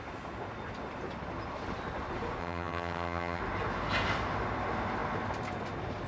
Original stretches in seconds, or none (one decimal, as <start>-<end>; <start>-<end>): 0.0-2.4; 3.4-6.1